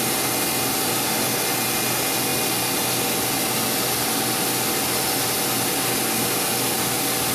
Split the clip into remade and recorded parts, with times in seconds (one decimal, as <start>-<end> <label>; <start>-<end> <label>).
0.0-7.3 recorded